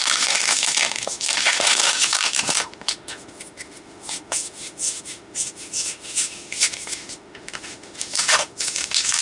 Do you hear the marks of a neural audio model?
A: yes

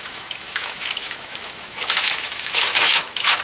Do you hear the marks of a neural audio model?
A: yes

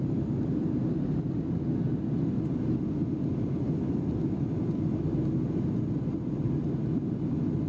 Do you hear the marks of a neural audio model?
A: no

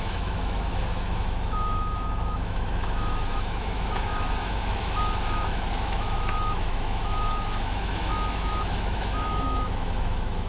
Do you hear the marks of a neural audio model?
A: yes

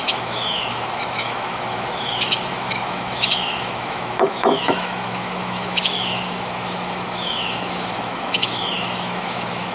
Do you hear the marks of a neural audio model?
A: yes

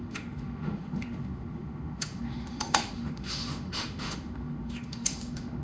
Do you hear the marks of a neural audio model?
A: yes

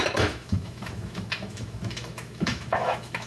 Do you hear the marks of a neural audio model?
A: yes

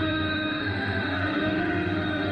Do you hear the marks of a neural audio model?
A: yes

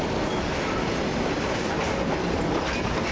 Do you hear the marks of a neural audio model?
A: no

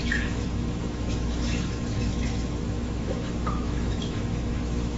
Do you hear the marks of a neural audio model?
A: yes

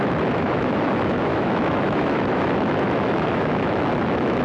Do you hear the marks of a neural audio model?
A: yes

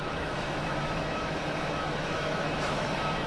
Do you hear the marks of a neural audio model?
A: yes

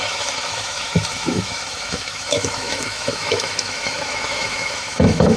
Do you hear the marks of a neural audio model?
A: yes